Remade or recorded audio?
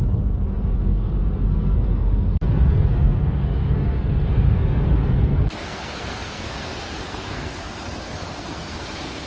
remade